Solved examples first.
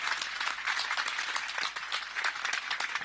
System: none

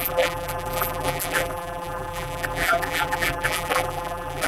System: vocoder, BigVGAN v2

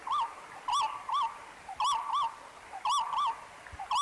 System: none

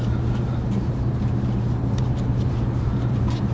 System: vocoder, BigVGAN v2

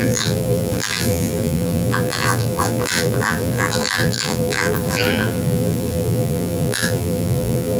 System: vocoder, BigVGAN v2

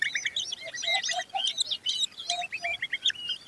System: none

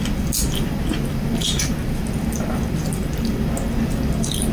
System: none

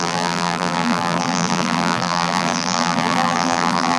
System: vocoder, BigVGAN v2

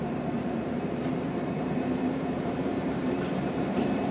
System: vocoder, BigVGAN v2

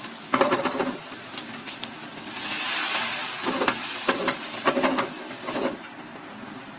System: none